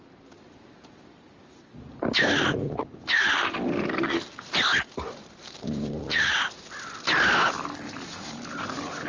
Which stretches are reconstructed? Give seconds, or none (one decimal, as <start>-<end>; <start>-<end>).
5.2-6.6

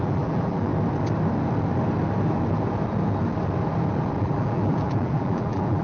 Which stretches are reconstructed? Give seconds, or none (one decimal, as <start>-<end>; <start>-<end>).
0.0-0.7; 4.2-5.8

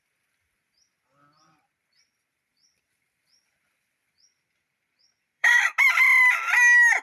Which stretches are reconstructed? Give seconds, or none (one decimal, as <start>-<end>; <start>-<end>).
2.5-5.5

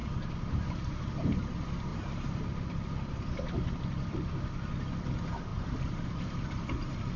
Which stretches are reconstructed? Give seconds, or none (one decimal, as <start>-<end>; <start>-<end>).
1.9-2.4; 5.5-7.2

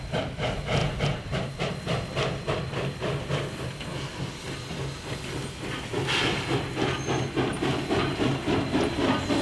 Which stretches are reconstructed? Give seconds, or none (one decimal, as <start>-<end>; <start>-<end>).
0.8-1.5

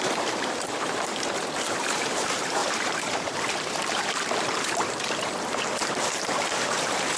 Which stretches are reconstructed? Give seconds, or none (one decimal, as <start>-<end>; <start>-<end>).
0.0-1.1; 1.6-7.2